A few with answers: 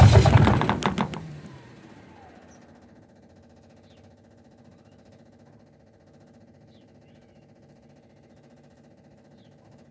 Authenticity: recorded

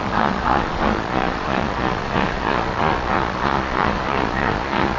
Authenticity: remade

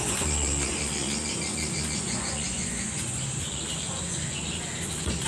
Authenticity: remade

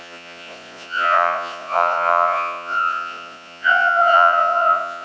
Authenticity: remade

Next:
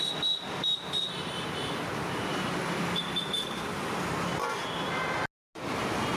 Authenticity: recorded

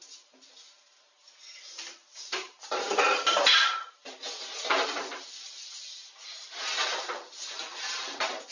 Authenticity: recorded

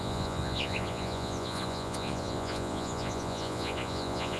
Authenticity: remade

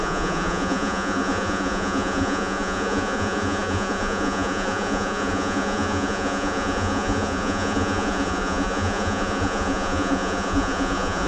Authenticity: remade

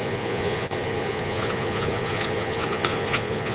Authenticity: remade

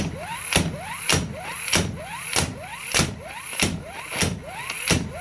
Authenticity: recorded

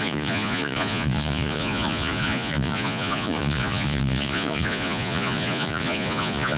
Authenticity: remade